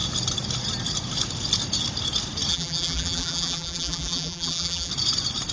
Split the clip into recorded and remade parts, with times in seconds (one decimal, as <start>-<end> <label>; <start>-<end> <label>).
0.0-2.5 recorded; 2.5-4.9 remade; 4.9-5.5 recorded